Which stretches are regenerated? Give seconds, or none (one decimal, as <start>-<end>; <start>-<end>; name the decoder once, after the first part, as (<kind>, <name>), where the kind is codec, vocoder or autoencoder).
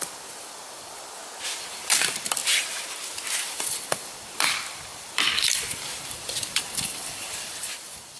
0.0-1.2 (vocoder, BigVGAN v2); 1.7-2.4; 3.4-8.2